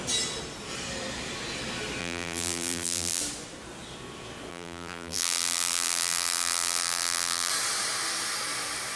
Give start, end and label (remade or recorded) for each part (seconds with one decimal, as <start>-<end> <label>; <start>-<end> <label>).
0.0-2.0 recorded; 2.0-3.2 remade; 3.2-4.5 recorded; 4.5-7.5 remade; 7.5-9.0 recorded